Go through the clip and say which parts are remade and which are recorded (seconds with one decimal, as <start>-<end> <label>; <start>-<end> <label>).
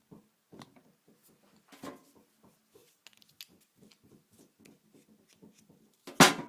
0.0-6.5 recorded